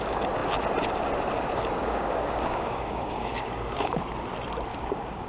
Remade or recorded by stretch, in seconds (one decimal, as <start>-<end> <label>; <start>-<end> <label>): 0.0-1.8 recorded; 1.8-4.0 remade; 4.0-4.7 recorded; 4.7-5.3 remade